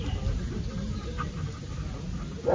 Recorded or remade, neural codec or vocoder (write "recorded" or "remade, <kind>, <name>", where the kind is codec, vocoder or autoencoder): recorded